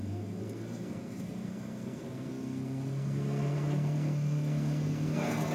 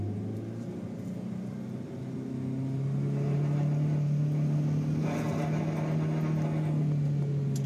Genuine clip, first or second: second